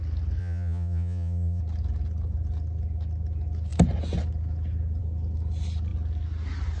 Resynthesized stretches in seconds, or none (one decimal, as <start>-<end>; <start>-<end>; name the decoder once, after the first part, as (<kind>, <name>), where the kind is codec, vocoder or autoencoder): 0.4-1.6 (vocoder, Vocos)